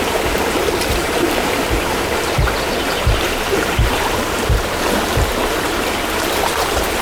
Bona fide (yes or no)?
no